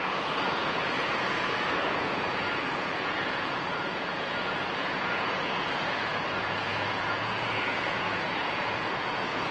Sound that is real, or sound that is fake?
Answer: fake